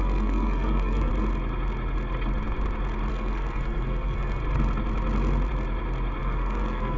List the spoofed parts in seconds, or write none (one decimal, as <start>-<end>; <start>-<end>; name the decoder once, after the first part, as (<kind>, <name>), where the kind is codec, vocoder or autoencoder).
0.0-1.1 (codec, SNAC); 3.1-4.4; 6.2-7.0